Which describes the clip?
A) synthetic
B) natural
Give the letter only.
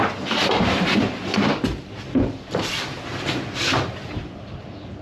A